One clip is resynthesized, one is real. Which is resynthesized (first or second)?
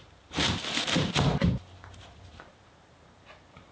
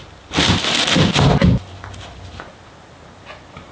first